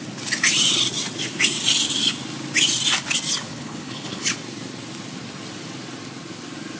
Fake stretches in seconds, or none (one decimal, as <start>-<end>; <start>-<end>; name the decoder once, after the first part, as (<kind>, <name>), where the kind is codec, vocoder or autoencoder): 3.5-4.3 (codec, HILCodec)